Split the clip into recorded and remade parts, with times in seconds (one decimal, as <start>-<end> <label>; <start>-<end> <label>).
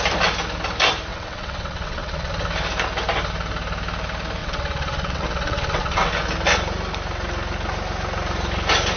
0.0-1.1 recorded; 1.1-2.3 remade; 2.3-4.4 recorded; 4.4-6.1 remade; 6.1-9.0 recorded